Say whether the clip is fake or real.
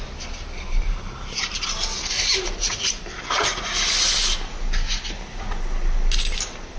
real